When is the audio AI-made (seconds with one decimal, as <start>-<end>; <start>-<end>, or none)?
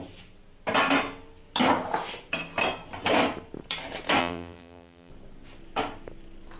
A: 4.2-5.1